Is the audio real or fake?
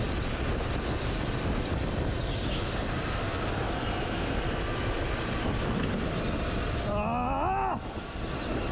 real